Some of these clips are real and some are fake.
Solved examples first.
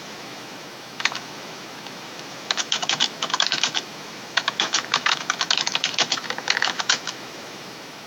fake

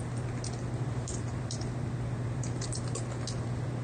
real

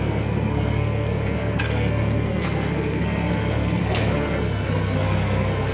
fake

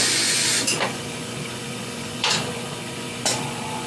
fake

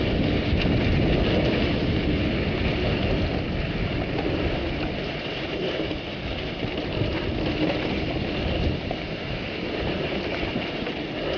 real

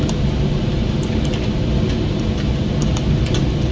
real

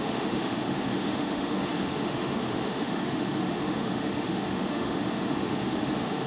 fake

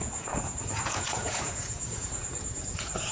fake